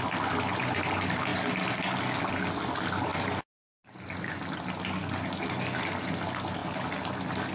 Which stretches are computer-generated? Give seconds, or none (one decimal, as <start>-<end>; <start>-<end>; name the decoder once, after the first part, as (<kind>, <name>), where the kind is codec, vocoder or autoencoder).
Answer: 3.1-4.2 (vocoder, BigVGAN v2); 6.6-7.5